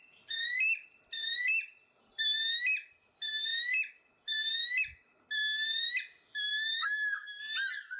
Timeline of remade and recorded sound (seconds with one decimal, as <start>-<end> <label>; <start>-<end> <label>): 0.0-6.5 recorded; 6.5-7.4 remade; 7.4-8.0 recorded